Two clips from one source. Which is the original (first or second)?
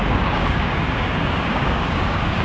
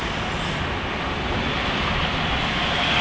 second